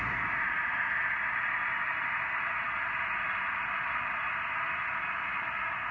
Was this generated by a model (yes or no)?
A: no